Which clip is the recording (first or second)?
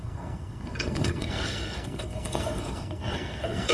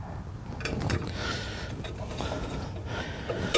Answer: second